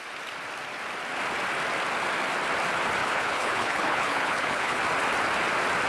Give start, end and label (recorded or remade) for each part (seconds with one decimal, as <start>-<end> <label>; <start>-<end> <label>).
0.0-3.0 recorded; 3.0-4.8 remade; 4.8-5.9 recorded